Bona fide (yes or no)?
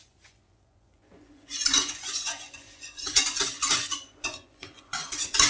no